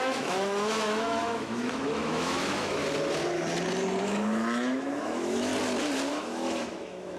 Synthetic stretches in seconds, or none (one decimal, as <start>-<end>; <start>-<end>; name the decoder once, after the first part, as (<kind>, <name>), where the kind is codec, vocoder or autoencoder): 0.0-2.8 (autoencoder, DAC-VAE); 4.0-5.5; 6.1-7.2